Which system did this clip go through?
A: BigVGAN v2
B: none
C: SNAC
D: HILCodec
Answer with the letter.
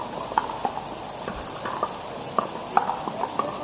B